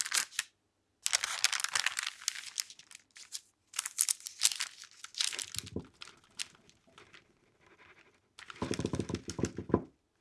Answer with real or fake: real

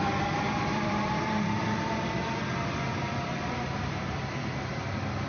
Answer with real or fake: fake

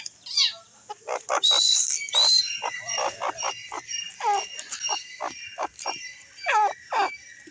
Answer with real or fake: real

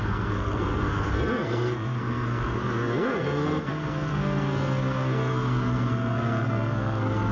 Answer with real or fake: fake